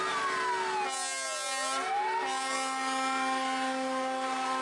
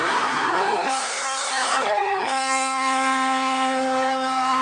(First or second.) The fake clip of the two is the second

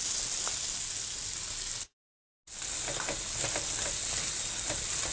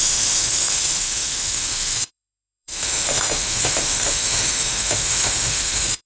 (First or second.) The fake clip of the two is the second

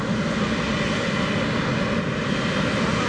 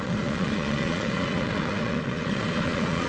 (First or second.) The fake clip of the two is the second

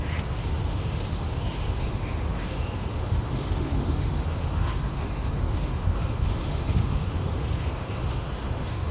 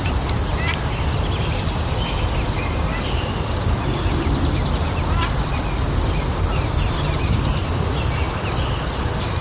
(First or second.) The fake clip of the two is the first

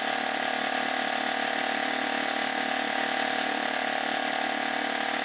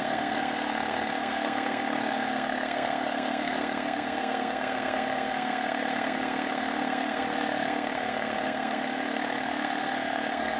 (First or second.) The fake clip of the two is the second